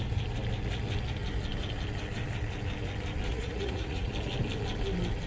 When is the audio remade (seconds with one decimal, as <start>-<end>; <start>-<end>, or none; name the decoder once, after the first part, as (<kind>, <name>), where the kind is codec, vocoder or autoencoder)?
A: 3.3-4.1 (vocoder, Vocos)